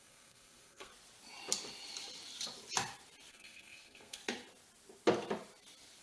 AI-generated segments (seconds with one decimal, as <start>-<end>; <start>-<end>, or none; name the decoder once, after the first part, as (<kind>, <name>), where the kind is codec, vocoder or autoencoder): 0.0-0.9 (codec, SNAC); 3.3-4.2